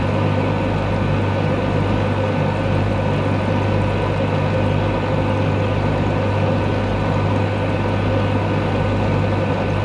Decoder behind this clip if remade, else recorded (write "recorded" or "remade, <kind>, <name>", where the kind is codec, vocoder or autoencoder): recorded